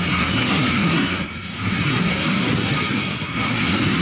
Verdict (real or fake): fake